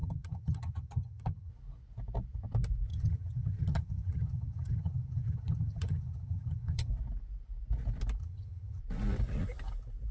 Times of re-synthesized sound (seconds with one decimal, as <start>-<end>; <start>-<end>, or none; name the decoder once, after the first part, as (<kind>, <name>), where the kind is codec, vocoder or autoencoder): 0.0-1.5 (vocoder, HiFi-GAN); 2.9-6.9; 8.2-8.8